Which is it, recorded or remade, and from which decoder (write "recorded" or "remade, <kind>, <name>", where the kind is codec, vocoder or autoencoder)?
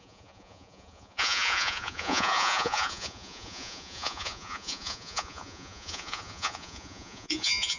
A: remade, vocoder, Vocos